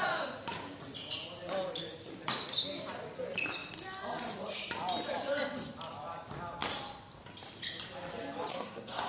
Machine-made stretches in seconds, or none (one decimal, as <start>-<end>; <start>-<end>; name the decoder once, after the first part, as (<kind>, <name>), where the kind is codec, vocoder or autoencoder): 8.5-9.1 (codec, SNAC)